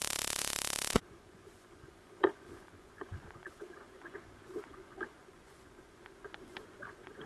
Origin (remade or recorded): remade